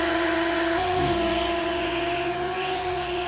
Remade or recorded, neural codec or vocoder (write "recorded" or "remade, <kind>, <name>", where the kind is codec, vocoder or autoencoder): remade, vocoder, Vocos